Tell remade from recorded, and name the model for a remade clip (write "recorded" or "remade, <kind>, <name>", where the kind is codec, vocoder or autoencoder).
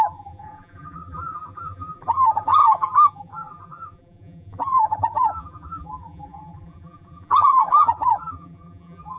remade, vocoder, BigVGAN v2